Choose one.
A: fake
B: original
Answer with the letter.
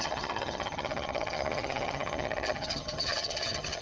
A